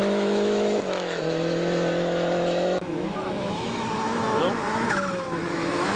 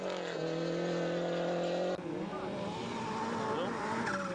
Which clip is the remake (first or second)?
first